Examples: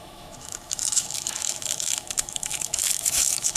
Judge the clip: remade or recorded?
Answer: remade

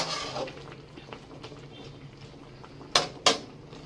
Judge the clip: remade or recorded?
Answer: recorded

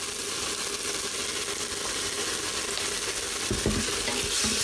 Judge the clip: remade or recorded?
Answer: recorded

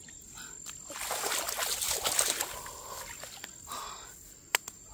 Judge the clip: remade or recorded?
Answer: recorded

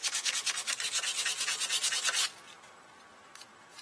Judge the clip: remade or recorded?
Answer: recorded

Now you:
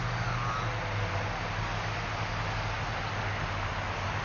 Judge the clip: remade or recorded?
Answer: recorded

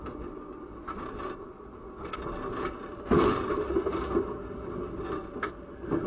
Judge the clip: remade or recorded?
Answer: recorded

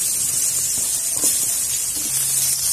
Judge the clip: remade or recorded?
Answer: recorded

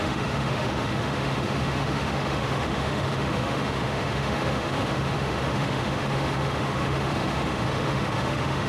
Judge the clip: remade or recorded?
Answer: remade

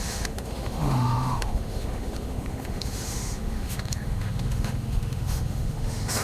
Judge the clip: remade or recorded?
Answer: remade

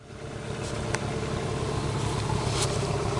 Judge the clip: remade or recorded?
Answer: recorded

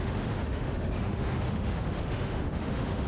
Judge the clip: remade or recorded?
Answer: remade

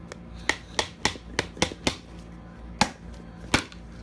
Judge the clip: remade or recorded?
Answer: recorded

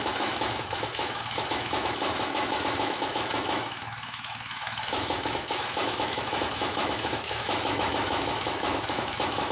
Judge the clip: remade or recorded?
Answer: remade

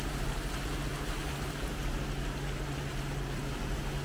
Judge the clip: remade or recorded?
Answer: recorded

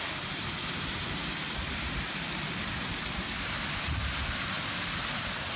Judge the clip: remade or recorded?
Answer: recorded